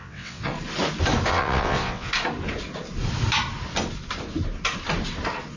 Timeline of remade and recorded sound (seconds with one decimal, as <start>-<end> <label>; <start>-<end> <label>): 0.0-0.5 remade; 0.5-1.3 recorded; 1.3-2.1 remade; 2.1-5.6 recorded